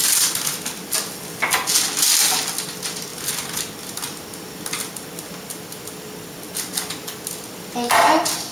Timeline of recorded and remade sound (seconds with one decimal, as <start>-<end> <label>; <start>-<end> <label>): 0.0-8.5 recorded

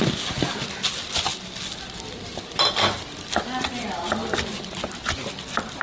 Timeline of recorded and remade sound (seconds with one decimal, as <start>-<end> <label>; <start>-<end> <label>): 0.0-5.8 recorded

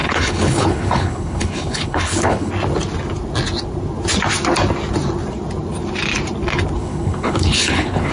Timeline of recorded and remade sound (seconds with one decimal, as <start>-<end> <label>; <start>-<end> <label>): 0.0-2.5 remade; 2.5-6.8 recorded; 6.8-8.1 remade

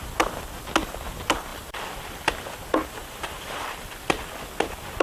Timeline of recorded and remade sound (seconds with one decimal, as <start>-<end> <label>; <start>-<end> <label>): 0.0-1.5 recorded; 1.5-2.5 remade; 2.5-3.0 recorded; 3.0-4.3 remade; 4.3-5.0 recorded

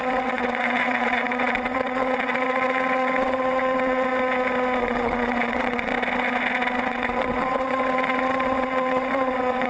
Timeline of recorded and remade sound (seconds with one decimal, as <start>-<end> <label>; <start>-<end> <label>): 0.0-4.1 remade; 4.1-4.8 recorded; 4.8-5.9 remade; 5.9-6.8 recorded; 6.8-9.7 remade

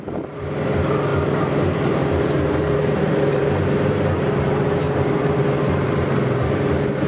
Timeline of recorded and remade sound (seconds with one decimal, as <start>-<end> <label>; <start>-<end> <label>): 0.0-7.1 remade